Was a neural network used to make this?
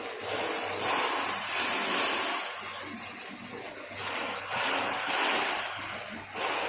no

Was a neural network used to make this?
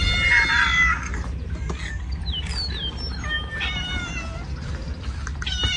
no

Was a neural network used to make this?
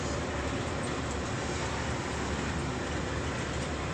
no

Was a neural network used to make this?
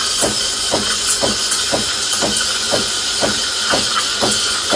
yes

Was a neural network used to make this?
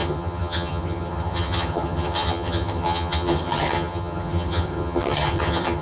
yes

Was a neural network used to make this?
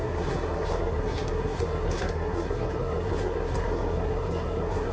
yes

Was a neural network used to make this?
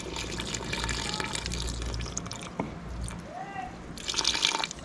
no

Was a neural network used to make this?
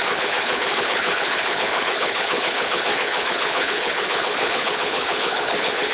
yes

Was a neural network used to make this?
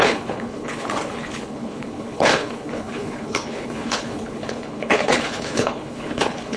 yes